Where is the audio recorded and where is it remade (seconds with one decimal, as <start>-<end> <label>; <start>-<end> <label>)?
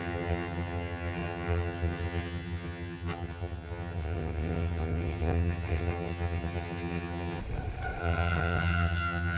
0.0-7.4 remade; 7.4-8.0 recorded; 8.0-9.4 remade